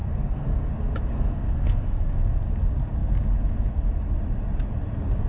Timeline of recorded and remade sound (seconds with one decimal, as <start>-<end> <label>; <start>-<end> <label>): 0.0-0.7 remade; 0.7-1.1 recorded; 1.1-2.1 remade; 2.1-5.3 recorded